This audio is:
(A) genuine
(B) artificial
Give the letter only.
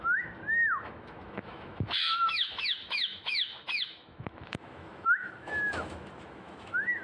B